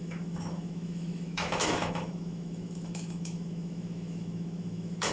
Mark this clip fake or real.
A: fake